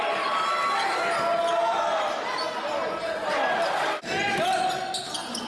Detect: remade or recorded recorded